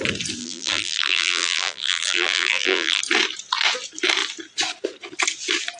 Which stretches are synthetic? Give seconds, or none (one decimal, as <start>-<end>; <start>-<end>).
0.4-3.0